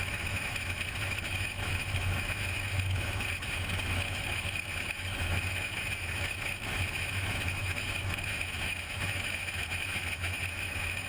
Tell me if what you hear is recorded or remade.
remade